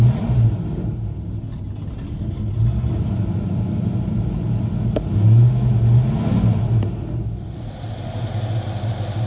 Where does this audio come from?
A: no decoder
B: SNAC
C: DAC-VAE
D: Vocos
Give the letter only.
A